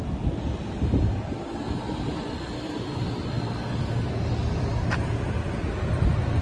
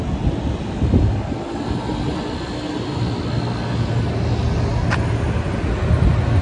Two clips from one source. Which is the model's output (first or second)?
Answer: first